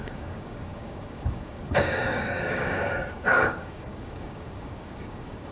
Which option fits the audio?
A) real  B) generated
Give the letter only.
B